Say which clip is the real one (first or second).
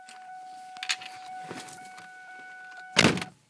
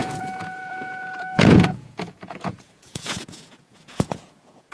first